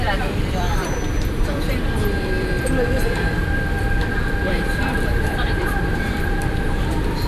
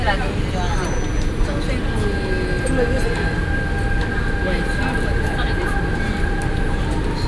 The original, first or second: second